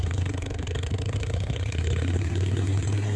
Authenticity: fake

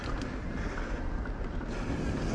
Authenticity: real